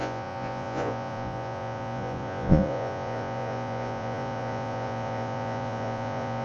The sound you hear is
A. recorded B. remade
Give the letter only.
B